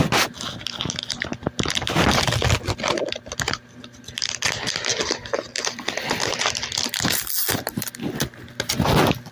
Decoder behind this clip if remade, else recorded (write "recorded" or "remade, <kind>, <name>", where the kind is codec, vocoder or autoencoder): recorded